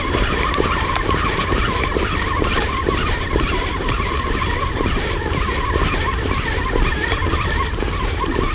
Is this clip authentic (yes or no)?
no